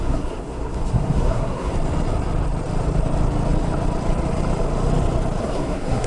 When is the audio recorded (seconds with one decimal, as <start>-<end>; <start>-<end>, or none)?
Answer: 1.7-5.4